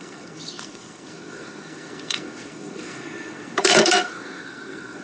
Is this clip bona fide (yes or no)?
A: no